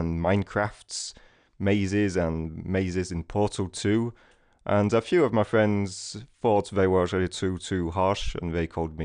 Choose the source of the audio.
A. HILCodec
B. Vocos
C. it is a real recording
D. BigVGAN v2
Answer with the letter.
C